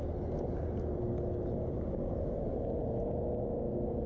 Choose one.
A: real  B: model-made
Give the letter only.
A